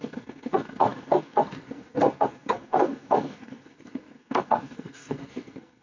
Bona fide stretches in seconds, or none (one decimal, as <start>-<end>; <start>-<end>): none